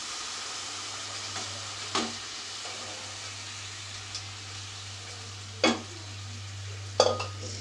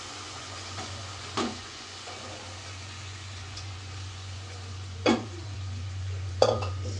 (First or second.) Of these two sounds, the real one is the first